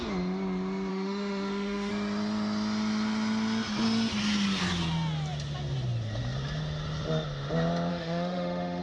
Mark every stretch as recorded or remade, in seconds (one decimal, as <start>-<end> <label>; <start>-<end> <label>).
0.0-0.9 recorded; 0.9-1.9 remade; 1.9-7.9 recorded; 7.9-8.8 remade